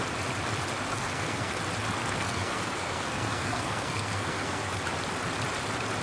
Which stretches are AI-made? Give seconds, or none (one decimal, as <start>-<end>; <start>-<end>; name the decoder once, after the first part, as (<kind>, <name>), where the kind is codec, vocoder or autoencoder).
0.9-1.6 (codec, SNAC); 2.0-4.8